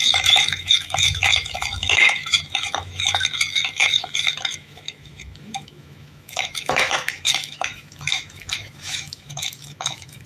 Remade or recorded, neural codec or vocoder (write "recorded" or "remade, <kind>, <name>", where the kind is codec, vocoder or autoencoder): remade, autoencoder, DAC-VAE